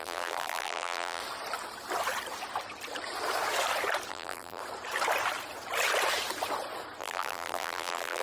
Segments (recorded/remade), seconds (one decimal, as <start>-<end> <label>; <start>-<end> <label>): 0.0-1.2 remade; 1.2-4.1 recorded; 4.1-4.6 remade; 4.6-7.0 recorded; 7.0-8.2 remade